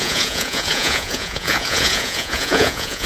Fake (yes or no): yes